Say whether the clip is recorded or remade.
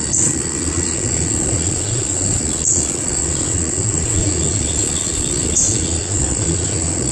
remade